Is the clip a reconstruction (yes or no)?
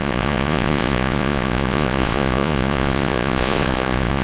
yes